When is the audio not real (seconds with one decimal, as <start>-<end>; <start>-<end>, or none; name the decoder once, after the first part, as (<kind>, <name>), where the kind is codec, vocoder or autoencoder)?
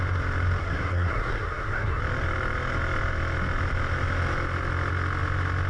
0.6-2.0 (codec, SNAC)